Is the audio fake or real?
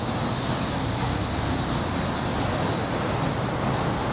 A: real